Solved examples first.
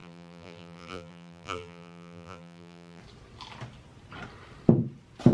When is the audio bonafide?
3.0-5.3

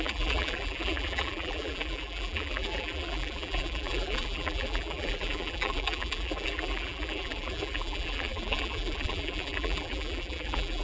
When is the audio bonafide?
none

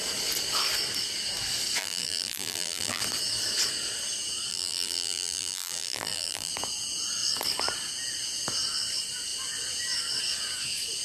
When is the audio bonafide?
0.0-1.8; 3.0-4.5; 6.5-11.0